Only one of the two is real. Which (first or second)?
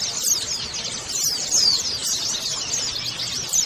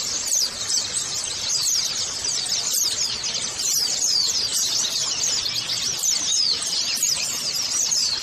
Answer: first